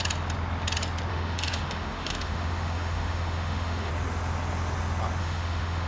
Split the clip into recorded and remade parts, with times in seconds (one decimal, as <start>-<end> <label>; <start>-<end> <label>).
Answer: 0.0-1.1 recorded; 1.1-3.9 remade; 3.9-5.2 recorded; 5.2-5.9 remade